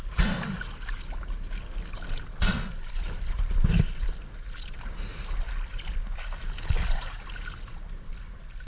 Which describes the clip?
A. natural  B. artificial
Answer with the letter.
A